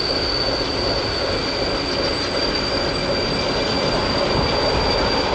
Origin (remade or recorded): recorded